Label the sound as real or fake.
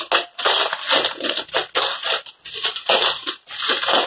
real